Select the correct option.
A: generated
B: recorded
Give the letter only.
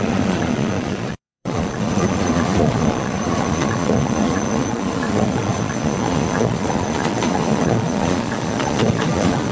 A